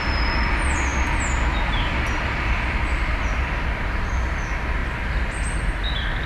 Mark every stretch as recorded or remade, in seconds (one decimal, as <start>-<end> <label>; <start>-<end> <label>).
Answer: 0.0-6.3 recorded